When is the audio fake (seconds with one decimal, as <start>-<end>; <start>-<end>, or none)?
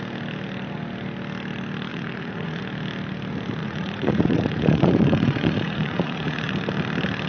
1.9-2.6; 3.6-6.5